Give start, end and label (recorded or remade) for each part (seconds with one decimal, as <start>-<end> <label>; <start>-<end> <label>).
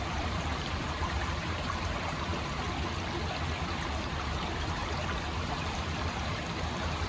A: 0.0-2.3 remade; 2.3-3.6 recorded; 3.6-7.1 remade